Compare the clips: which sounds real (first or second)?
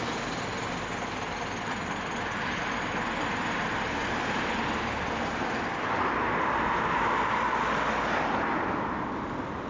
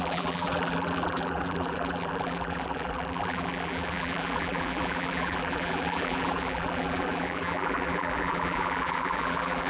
first